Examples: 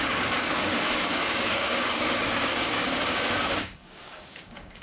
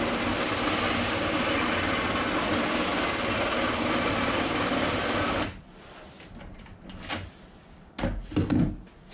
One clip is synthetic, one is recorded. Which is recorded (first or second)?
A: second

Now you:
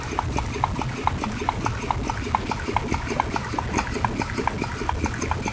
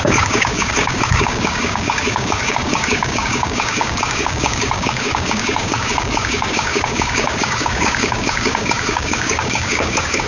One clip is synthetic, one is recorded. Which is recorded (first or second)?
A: first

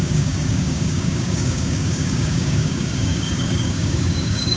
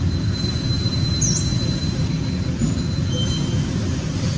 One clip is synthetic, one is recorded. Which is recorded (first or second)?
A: second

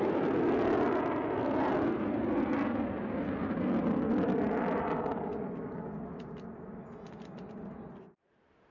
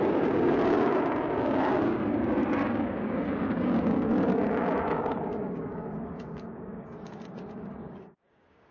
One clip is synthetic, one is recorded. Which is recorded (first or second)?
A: first